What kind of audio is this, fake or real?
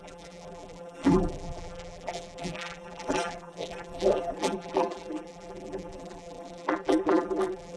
fake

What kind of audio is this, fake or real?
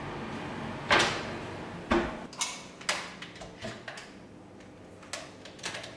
real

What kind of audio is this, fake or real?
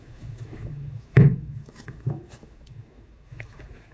fake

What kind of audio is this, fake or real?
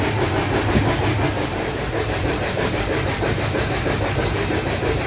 fake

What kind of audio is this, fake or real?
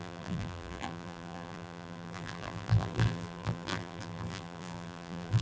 fake